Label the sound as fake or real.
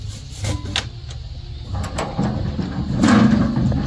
real